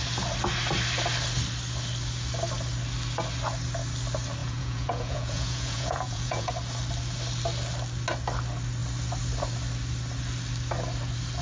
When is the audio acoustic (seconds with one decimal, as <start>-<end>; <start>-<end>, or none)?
0.0-4.4; 6.5-11.4